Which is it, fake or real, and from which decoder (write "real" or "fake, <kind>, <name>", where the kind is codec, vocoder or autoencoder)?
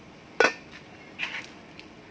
real